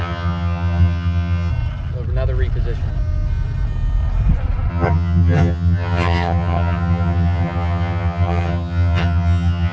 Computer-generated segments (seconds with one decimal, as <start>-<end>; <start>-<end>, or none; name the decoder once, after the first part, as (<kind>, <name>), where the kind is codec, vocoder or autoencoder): 0.0-1.5 (vocoder, HiFi-GAN); 4.7-9.7

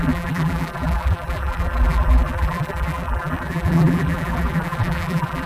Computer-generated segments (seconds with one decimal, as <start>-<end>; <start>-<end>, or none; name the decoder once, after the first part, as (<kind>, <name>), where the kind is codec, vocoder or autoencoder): 0.0-5.5 (vocoder, BigVGAN v2)

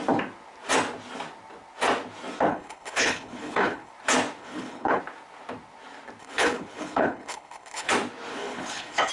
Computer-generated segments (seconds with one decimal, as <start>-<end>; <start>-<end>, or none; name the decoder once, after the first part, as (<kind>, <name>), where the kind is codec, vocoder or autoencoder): 2.5-3.9 (codec, HILCodec); 4.4-5.0; 6.2-7.9; 8.3-9.1